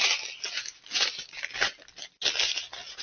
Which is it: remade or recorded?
recorded